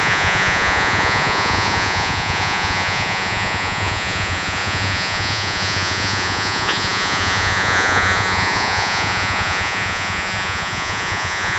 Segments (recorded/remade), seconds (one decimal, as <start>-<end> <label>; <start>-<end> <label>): 0.0-11.6 remade